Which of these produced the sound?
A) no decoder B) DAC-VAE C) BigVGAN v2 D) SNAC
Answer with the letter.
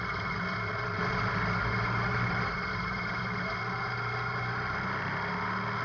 A